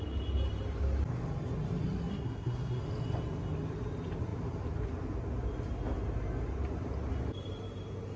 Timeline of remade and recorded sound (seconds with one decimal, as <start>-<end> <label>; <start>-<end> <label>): 0.0-2.1 recorded; 2.1-2.8 remade; 2.8-8.2 recorded